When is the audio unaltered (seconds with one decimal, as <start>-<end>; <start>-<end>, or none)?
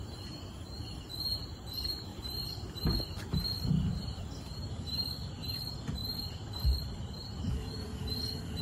0.0-2.1; 4.2-6.0; 8.1-8.6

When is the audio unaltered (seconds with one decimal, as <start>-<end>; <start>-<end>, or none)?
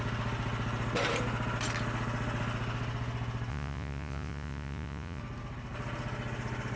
0.0-3.5; 5.2-6.8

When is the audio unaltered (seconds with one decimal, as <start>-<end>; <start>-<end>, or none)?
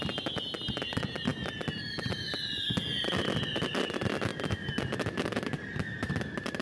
0.0-6.6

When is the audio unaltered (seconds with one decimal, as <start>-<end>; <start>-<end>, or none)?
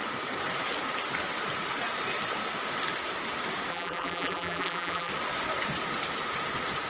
0.0-3.7; 5.1-6.9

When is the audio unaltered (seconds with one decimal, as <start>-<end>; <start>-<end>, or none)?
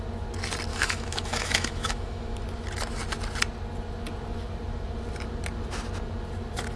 0.0-0.7; 2.4-6.8